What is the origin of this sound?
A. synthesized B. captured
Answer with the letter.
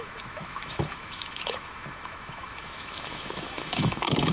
A